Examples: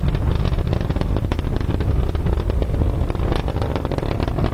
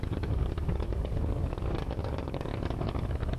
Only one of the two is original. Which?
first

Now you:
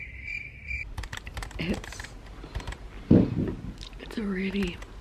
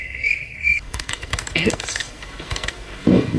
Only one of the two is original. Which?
first